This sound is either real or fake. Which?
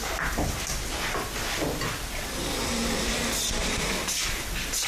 real